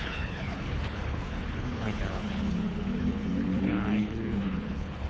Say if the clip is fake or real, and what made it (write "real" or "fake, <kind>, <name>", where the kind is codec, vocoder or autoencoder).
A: fake, codec, HILCodec